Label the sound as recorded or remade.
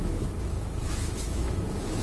remade